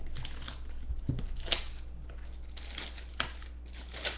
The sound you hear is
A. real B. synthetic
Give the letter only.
A